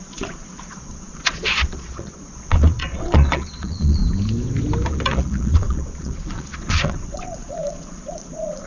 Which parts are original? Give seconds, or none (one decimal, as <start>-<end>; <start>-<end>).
4.0-4.9